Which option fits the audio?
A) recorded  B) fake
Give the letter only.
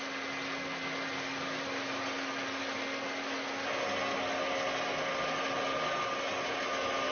A